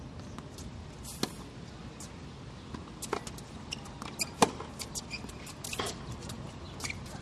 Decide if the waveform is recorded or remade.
recorded